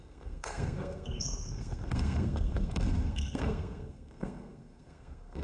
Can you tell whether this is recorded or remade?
remade